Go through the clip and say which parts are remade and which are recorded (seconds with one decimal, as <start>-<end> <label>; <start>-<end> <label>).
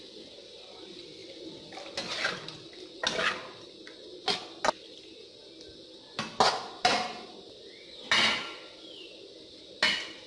0.0-6.8 recorded; 6.8-7.3 remade; 7.3-10.3 recorded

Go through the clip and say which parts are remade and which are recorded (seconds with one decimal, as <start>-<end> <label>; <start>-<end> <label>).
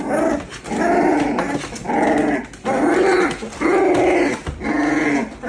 0.0-5.5 recorded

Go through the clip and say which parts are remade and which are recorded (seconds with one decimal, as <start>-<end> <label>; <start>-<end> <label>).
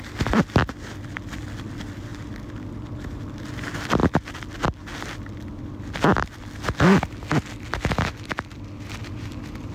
0.0-9.7 recorded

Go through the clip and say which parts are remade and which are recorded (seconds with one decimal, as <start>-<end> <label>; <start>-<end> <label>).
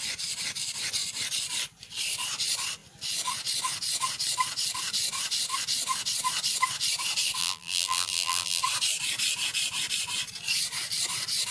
0.0-7.4 recorded; 7.4-8.6 remade; 8.6-11.5 recorded